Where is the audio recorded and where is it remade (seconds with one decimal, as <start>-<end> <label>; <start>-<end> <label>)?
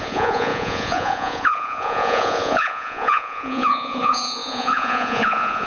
0.0-5.7 remade